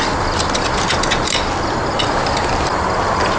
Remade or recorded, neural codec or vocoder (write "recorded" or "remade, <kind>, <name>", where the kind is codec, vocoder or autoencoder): recorded